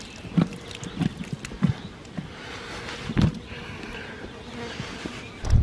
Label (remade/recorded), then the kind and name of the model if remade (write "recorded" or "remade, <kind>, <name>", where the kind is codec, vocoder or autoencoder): recorded